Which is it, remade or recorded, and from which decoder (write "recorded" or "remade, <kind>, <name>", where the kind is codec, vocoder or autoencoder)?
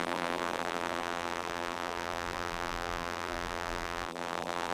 remade, vocoder, BigVGAN v2